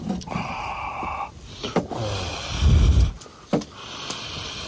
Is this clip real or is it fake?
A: real